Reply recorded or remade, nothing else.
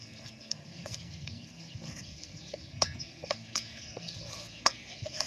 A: remade